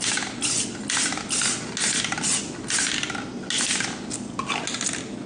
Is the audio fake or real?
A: real